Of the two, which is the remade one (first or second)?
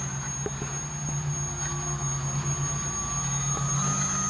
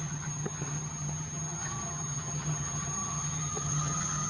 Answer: second